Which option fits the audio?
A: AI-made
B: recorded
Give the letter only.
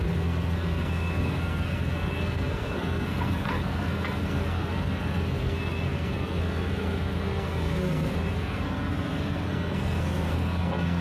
A